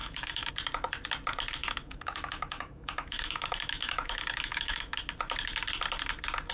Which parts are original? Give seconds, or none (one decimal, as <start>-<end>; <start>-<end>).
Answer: 0.5-1.6; 5.0-6.5